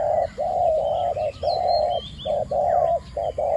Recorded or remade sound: recorded